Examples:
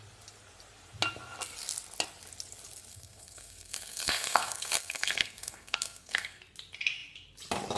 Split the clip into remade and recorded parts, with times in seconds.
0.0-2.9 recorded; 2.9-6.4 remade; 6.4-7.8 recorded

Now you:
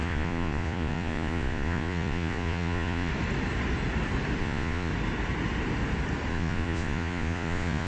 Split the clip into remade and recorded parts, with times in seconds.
0.0-3.1 remade; 3.1-4.4 recorded; 4.4-4.9 remade; 4.9-6.3 recorded; 6.3-7.9 remade

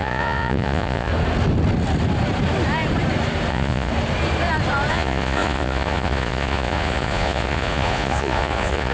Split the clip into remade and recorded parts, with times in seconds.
0.0-1.1 remade; 1.1-3.5 recorded; 3.5-3.9 remade; 3.9-4.9 recorded; 4.9-8.9 remade